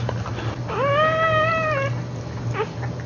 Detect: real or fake real